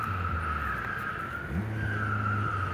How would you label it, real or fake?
real